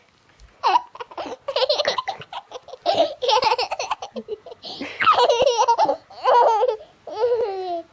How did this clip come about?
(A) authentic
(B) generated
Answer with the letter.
A